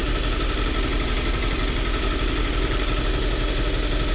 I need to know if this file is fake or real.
real